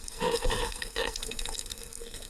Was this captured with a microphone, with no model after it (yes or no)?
no